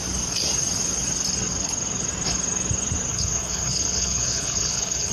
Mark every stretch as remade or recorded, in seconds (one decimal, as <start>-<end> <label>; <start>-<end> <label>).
0.0-3.1 recorded; 3.1-5.1 remade